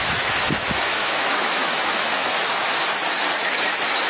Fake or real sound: fake